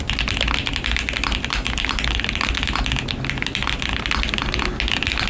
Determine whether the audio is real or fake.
real